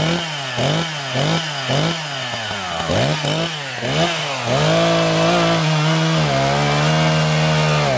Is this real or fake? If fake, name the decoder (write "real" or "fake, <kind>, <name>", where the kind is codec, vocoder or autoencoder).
real